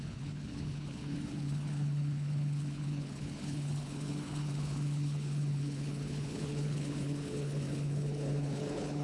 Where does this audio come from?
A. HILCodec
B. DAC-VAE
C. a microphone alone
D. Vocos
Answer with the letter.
A